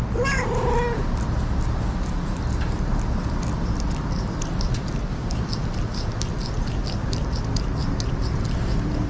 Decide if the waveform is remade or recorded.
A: recorded